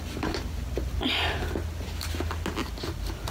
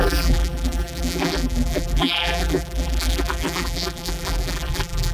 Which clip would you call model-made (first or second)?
second